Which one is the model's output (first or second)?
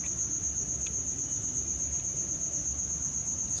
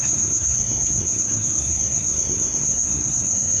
second